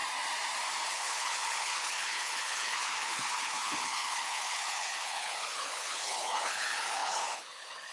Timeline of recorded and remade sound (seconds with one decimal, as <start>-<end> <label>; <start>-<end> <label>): 0.0-0.9 recorded; 0.9-7.9 remade